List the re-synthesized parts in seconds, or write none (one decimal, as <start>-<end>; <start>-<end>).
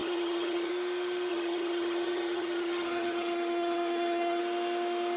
0.0-0.7; 1.3-4.4